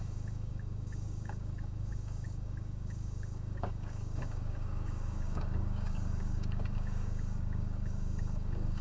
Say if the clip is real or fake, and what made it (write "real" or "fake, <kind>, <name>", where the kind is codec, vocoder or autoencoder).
fake, codec, DAC